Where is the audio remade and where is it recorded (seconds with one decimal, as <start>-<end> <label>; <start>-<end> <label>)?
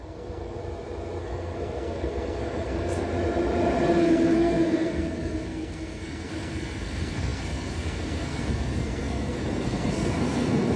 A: 0.0-0.6 remade; 0.6-1.2 recorded; 1.2-3.1 remade; 3.1-4.0 recorded; 4.0-10.8 remade